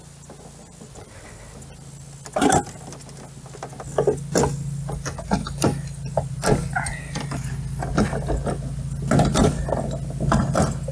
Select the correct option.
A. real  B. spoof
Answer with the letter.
A